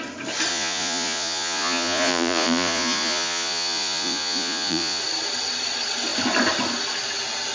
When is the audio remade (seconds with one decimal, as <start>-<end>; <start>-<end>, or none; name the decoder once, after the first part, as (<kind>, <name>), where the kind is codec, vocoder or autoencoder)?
0.5-5.0 (vocoder, Vocos)